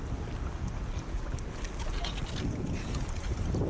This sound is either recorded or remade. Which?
recorded